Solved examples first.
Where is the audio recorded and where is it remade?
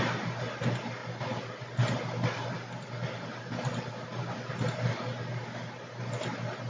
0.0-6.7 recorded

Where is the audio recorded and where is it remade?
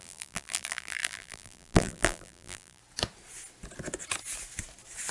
0.0-2.8 remade; 2.8-5.1 recorded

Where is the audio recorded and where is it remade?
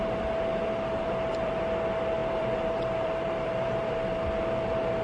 0.0-0.5 recorded; 0.5-1.6 remade; 1.6-2.2 recorded; 2.2-3.9 remade; 3.9-5.0 recorded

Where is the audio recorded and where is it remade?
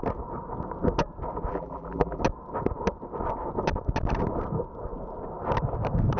0.0-1.5 recorded; 1.5-2.2 remade; 2.2-6.2 recorded